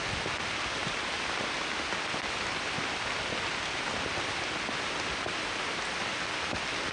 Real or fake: real